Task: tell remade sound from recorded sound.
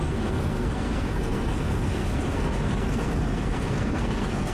remade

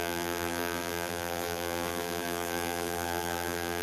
remade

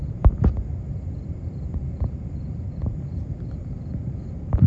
remade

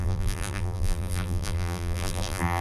remade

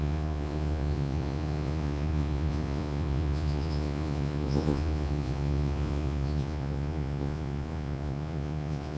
remade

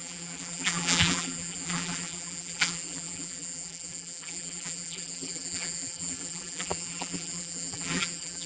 remade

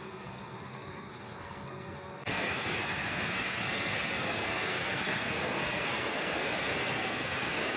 remade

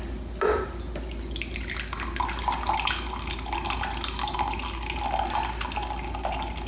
recorded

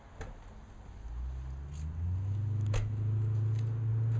recorded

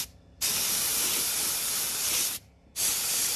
recorded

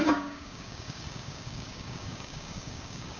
remade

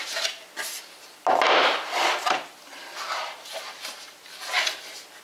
recorded